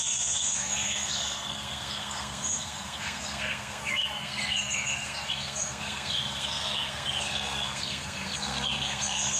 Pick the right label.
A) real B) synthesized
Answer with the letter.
B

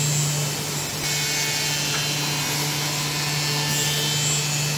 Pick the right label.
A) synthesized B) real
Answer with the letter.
B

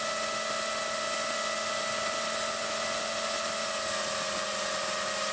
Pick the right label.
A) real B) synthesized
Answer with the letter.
A